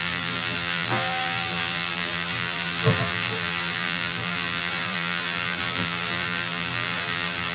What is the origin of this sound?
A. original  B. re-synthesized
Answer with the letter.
B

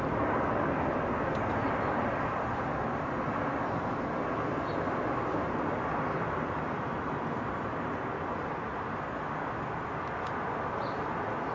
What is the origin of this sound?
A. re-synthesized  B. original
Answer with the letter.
B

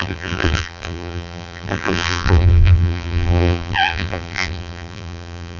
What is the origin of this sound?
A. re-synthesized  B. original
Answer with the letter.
A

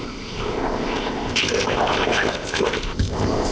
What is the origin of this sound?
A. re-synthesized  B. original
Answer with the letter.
A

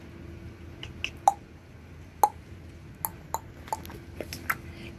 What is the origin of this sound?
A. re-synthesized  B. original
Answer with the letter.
B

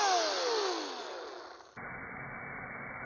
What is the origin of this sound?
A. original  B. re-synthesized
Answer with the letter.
A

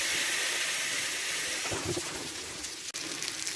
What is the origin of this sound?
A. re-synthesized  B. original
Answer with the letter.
B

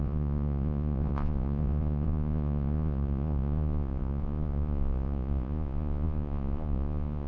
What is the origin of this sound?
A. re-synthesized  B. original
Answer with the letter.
A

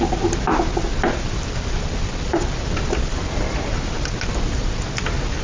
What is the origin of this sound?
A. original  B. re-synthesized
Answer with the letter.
A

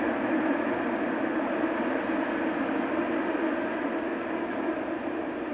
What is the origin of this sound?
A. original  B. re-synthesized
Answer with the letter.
A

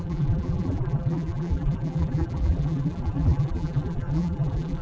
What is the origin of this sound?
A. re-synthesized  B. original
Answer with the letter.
A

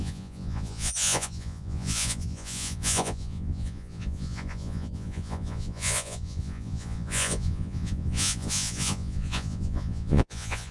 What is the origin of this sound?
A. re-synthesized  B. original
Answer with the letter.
A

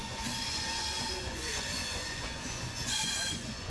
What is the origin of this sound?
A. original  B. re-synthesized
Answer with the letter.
B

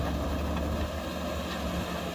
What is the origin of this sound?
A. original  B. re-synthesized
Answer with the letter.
A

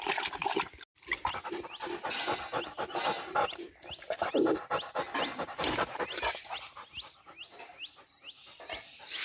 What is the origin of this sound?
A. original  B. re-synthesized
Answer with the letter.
A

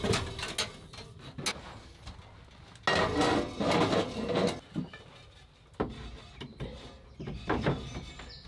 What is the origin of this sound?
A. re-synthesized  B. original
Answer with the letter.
B